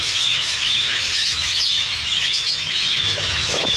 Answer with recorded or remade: remade